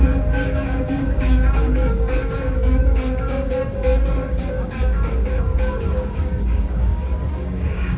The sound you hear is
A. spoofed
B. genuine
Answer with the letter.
A